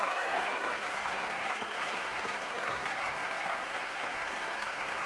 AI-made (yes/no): yes